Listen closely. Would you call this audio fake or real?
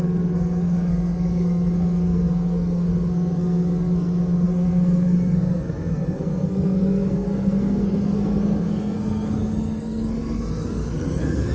fake